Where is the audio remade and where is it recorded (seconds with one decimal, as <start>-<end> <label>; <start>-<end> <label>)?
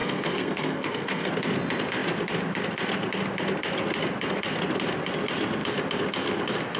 0.0-1.3 remade; 1.3-6.8 recorded